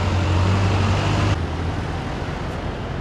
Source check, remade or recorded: recorded